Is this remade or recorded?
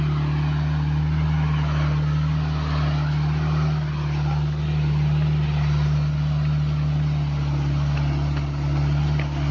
recorded